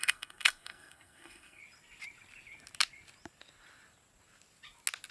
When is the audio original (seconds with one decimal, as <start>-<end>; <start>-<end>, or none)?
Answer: 1.6-5.1